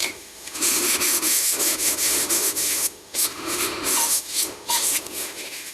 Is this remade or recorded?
remade